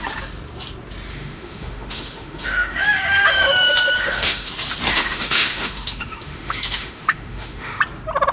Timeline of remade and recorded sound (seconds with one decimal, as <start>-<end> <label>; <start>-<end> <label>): 0.0-1.1 recorded; 1.1-4.5 remade; 4.5-4.9 recorded; 4.9-7.8 remade; 7.8-8.3 recorded